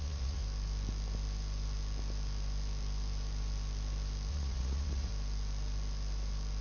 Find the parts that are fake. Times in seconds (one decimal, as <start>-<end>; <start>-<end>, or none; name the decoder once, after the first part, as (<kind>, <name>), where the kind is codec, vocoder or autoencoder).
0.0-0.4 (vocoder, Vocos); 4.3-5.1